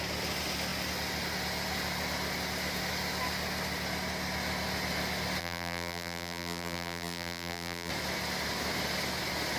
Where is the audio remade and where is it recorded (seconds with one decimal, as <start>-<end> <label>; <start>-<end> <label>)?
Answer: 0.0-5.4 recorded; 5.4-7.9 remade; 7.9-9.6 recorded

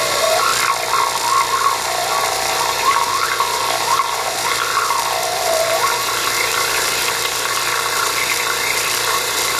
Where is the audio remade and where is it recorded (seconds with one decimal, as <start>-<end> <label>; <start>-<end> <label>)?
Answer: 0.0-0.5 remade; 0.5-1.7 recorded; 1.7-9.6 remade

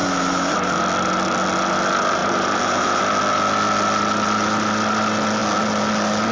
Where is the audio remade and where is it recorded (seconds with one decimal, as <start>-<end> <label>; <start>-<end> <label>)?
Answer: 0.0-0.8 remade; 0.8-2.2 recorded; 2.2-3.0 remade; 3.0-6.3 recorded